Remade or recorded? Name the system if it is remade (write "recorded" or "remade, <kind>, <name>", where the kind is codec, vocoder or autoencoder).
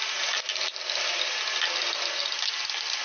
recorded